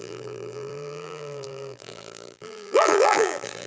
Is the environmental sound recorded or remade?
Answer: remade